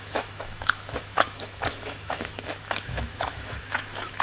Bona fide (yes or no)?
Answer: no